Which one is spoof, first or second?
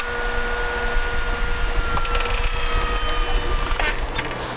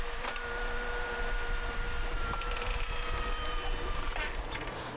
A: second